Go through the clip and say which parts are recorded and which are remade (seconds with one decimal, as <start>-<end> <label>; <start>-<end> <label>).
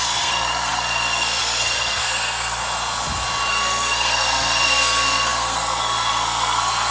0.0-2.6 remade; 2.6-3.5 recorded; 3.5-6.9 remade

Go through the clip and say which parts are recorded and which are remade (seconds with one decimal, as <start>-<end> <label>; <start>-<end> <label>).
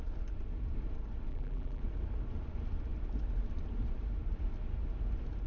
0.0-1.3 recorded; 1.3-1.8 remade; 1.8-5.5 recorded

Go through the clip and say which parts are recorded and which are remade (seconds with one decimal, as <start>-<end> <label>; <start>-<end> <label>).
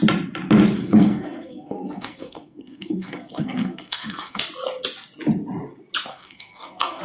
0.0-0.8 recorded; 0.8-4.4 remade; 4.4-6.1 recorded; 6.1-7.0 remade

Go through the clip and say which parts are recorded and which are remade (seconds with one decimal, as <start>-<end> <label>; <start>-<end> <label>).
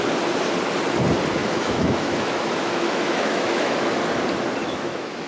0.0-1.4 recorded; 1.4-3.9 remade; 3.9-4.6 recorded; 4.6-5.3 remade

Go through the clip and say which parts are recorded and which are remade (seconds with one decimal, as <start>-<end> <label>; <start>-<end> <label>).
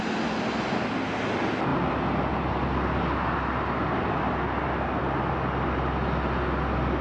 0.0-7.0 recorded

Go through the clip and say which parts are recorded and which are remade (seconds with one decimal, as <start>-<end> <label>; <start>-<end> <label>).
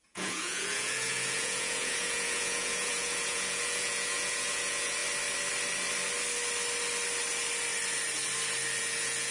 0.0-5.0 remade; 5.0-8.8 recorded; 8.8-9.3 remade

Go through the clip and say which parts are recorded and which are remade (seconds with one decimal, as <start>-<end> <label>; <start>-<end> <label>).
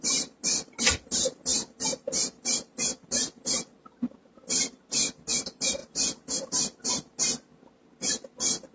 0.0-8.7 recorded